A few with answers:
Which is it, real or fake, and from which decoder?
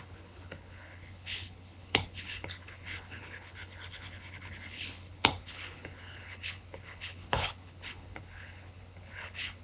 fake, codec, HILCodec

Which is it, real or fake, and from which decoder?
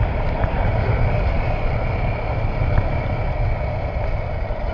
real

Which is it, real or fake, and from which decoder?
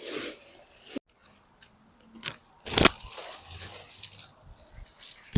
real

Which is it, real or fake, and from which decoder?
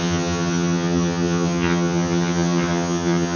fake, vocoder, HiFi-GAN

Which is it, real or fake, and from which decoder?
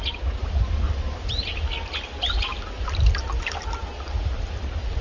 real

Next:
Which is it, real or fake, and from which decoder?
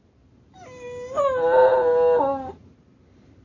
real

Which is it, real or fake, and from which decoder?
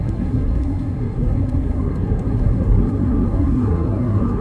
fake, codec, SNAC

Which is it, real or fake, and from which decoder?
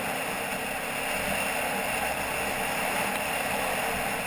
real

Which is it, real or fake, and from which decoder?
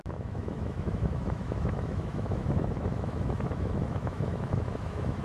fake, autoencoder, DAC-VAE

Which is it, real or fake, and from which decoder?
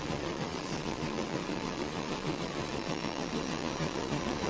fake, vocoder, Vocos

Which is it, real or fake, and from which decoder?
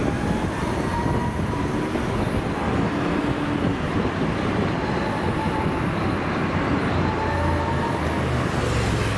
real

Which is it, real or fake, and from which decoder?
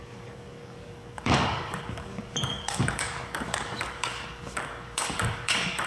fake, codec, DAC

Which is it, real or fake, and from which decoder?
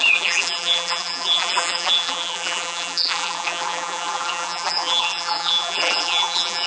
fake, vocoder, BigVGAN v2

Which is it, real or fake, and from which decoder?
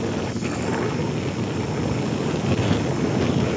real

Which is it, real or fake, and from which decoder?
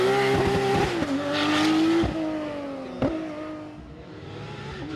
real